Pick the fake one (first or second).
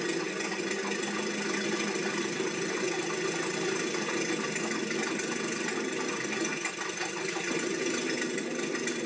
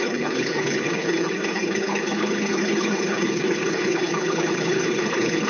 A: second